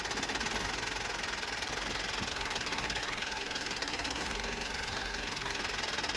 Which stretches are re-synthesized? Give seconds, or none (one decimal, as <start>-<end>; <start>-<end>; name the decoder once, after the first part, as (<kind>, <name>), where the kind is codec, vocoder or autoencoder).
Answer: 2.3-5.6 (codec, SNAC)